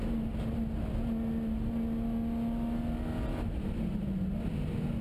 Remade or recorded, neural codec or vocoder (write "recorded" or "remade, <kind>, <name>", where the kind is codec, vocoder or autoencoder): recorded